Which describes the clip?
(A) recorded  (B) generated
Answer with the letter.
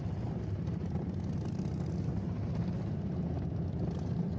A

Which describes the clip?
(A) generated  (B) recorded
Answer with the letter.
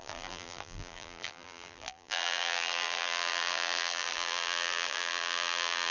A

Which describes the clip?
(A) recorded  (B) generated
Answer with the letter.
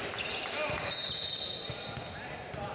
A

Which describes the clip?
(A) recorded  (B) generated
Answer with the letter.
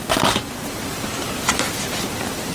B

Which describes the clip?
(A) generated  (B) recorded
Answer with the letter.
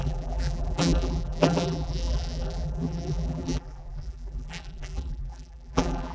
A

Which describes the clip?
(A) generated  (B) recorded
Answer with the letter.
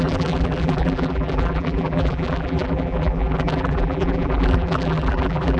A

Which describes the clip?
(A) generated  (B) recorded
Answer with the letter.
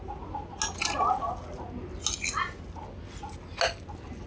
B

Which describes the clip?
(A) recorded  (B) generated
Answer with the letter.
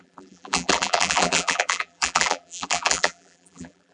B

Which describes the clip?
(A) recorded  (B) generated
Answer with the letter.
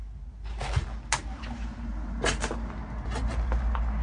A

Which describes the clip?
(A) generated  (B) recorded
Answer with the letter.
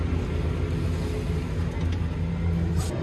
B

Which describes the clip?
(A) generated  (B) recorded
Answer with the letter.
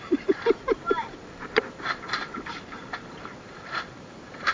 A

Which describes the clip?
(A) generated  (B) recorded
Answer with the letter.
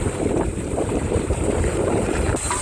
A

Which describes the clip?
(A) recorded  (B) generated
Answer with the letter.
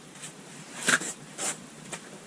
B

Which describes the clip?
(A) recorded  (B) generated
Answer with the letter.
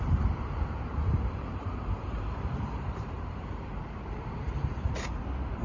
B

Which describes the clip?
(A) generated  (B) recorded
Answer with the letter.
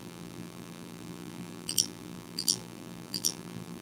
A